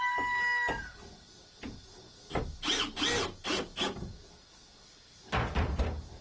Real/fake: real